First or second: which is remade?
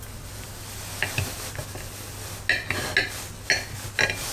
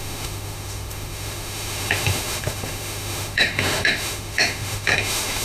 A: second